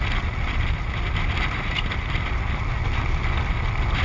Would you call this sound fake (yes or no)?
no